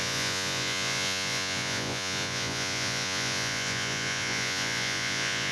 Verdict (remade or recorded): remade